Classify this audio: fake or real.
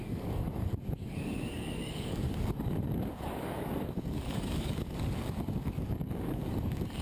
fake